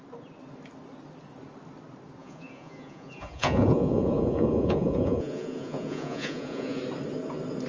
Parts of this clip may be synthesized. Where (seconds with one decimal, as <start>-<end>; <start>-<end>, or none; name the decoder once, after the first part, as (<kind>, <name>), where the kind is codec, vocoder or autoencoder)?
2.2-6.8 (vocoder, Vocos)